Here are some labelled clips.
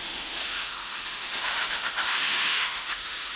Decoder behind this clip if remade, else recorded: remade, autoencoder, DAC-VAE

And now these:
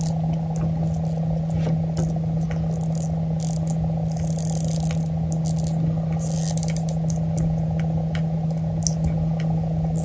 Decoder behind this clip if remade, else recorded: recorded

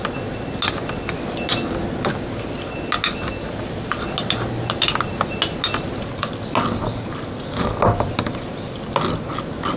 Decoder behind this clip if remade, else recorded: recorded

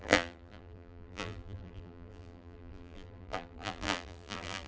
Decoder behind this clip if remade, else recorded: remade, vocoder, BigVGAN v2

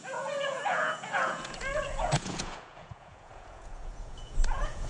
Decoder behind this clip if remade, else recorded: remade, vocoder, Vocos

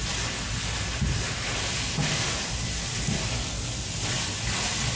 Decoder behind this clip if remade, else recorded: recorded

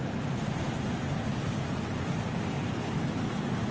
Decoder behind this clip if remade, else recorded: recorded